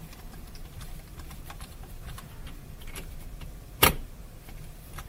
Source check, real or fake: fake